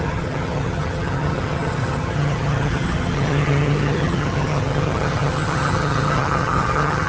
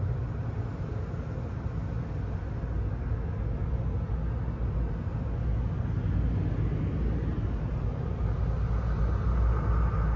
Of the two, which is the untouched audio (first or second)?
second